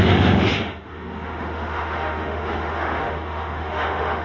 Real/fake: fake